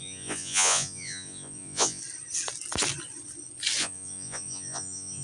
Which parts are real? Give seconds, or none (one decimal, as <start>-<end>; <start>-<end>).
2.0-3.8